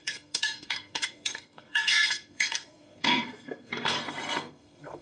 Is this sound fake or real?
fake